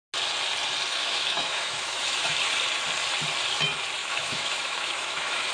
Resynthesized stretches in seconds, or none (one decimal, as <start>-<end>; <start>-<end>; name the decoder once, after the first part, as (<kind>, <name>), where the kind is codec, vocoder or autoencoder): 0.9-2.4 (autoencoder, DAC-VAE); 4.0-5.5